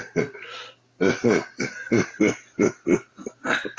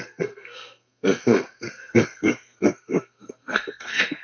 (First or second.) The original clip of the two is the first